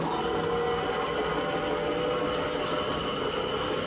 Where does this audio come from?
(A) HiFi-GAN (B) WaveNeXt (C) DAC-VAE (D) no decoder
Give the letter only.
D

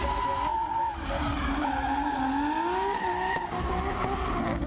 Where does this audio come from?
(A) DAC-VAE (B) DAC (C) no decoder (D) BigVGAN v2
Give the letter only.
C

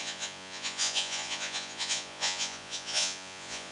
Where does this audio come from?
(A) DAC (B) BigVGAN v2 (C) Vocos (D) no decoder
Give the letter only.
C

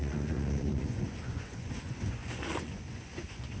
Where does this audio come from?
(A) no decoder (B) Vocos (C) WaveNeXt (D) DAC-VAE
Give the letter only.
B